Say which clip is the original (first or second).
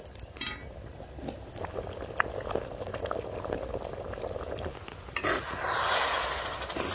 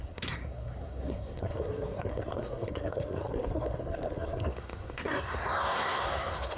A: first